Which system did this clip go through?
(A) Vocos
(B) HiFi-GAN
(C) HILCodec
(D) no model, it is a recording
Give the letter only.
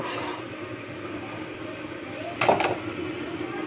D